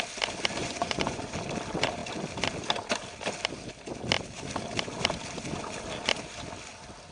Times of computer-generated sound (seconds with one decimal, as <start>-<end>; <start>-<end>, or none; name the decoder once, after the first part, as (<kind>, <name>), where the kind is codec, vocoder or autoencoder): 0.6-1.2 (vocoder, Vocos)